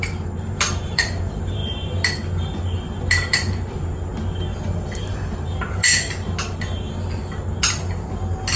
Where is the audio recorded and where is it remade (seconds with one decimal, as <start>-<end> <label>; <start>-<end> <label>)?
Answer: 0.0-1.6 remade; 1.6-2.4 recorded; 2.4-4.1 remade; 4.1-4.7 recorded; 4.7-5.8 remade; 5.8-8.6 recorded